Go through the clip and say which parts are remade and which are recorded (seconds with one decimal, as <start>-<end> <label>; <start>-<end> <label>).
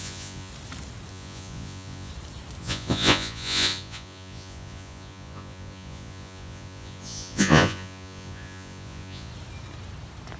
0.0-0.5 remade; 0.5-1.1 recorded; 1.1-2.1 remade; 2.1-2.6 recorded; 2.6-9.3 remade; 9.3-10.4 recorded